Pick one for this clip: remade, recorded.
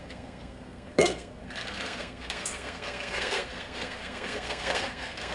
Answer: remade